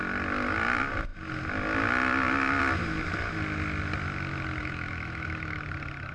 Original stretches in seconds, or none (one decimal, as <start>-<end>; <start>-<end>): 0.0-4.6; 5.6-6.1